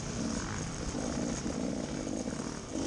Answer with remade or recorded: recorded